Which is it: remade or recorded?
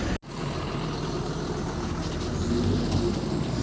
recorded